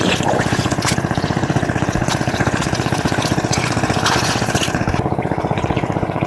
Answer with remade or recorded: remade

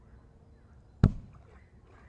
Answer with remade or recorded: recorded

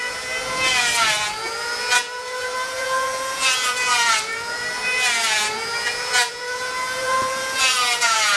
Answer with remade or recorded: remade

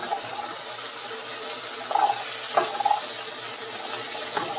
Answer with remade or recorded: recorded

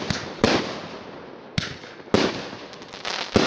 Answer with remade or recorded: recorded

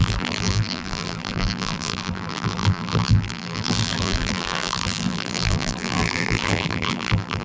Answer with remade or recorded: remade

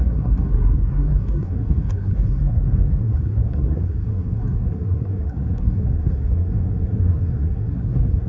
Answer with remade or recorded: remade